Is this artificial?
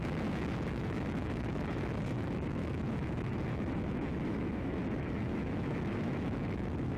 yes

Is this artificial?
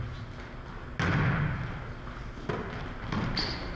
no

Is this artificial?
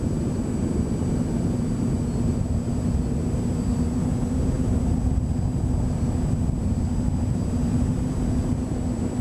no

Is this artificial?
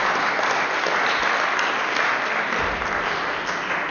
no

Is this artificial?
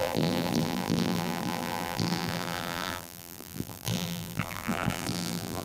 yes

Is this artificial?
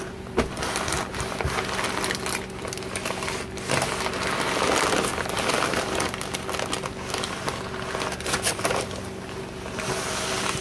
no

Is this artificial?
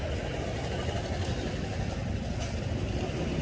no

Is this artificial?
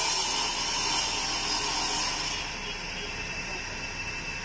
no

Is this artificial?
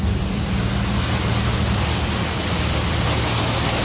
yes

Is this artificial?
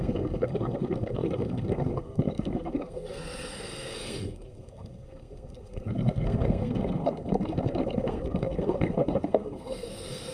yes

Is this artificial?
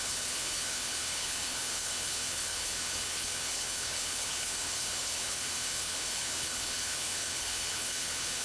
yes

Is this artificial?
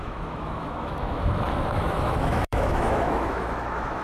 yes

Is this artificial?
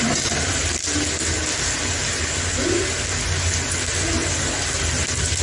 no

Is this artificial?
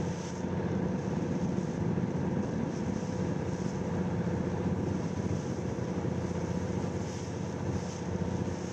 no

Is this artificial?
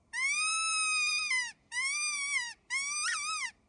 yes